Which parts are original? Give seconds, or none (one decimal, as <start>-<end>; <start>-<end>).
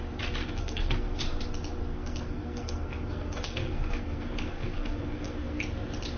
0.0-0.4; 1.2-1.9; 5.6-6.2